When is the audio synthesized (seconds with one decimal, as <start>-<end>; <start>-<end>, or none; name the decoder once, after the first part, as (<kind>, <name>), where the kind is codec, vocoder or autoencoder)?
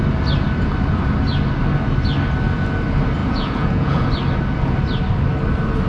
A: 3.2-4.1 (vocoder, Vocos)